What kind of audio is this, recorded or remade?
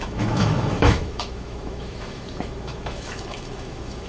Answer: remade